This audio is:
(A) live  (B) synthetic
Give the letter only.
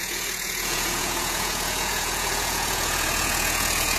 B